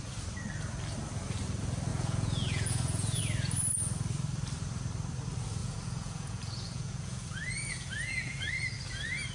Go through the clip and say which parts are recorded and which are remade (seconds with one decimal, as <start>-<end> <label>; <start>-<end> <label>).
0.0-1.9 recorded; 1.9-3.2 remade; 3.2-5.6 recorded; 5.6-8.5 remade; 8.5-9.3 recorded